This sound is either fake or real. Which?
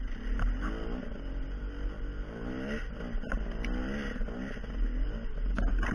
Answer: real